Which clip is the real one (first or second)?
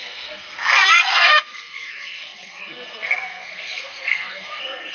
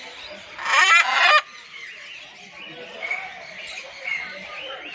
second